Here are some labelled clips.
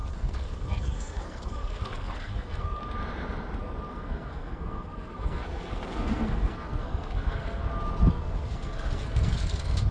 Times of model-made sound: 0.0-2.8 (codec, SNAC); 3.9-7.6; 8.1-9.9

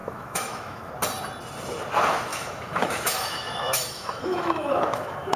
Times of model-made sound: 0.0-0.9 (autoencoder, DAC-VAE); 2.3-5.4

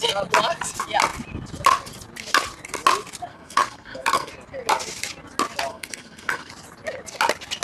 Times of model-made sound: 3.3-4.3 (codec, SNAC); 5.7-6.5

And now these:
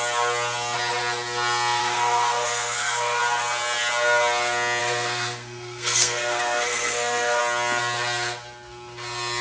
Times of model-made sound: 1.8-3.2 (codec, SNAC); 4.8-7.4